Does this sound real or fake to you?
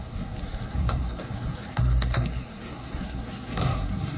fake